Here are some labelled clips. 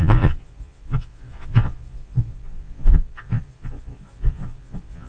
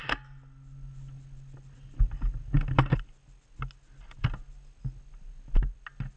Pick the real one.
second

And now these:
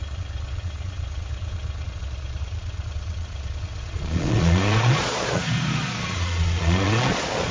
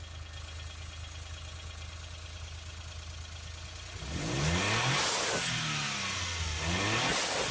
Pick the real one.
second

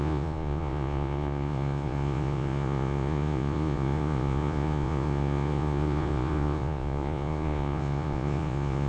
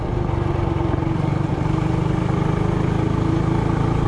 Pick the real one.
second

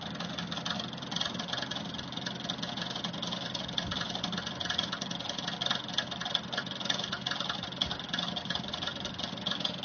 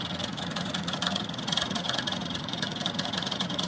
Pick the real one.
first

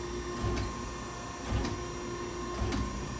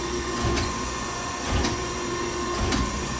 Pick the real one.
first